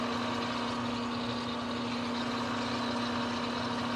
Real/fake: real